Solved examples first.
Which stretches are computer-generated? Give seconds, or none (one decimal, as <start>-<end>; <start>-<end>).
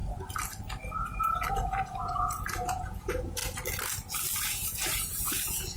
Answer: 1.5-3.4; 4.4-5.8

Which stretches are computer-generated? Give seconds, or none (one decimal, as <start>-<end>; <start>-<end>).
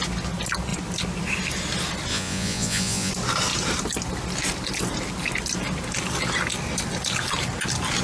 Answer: 2.1-3.1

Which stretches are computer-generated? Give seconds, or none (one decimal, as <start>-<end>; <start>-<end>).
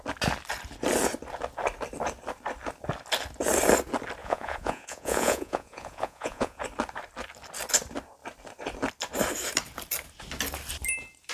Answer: 4.2-6.6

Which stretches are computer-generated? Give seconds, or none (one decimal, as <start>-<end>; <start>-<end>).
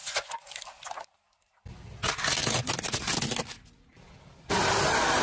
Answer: 0.0-0.6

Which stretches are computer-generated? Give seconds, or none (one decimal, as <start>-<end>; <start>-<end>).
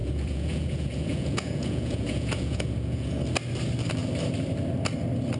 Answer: 0.0-3.2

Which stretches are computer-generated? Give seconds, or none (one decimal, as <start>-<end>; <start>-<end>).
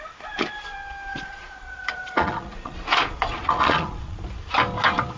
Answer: 1.1-4.2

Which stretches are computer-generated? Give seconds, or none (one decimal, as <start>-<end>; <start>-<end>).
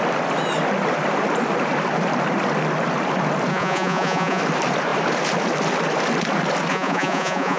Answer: 3.5-4.4; 6.7-7.6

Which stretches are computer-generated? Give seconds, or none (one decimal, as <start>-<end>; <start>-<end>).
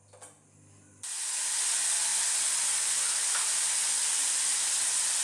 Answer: none